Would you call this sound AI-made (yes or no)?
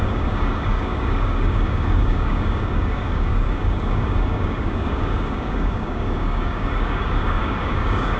yes